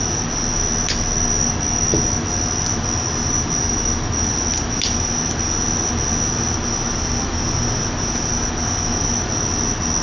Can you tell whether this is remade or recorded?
recorded